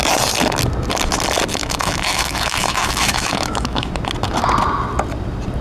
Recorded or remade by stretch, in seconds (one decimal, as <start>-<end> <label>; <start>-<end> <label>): 0.0-1.6 recorded; 1.6-3.9 remade; 3.9-5.6 recorded